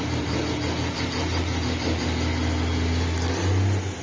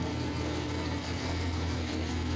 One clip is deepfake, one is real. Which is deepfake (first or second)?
second